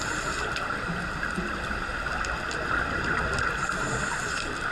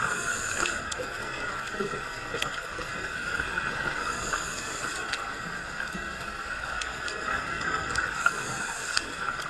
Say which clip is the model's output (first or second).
second